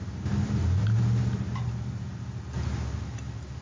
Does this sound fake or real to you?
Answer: real